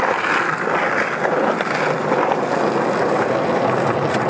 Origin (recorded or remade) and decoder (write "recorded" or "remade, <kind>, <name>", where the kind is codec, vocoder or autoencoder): recorded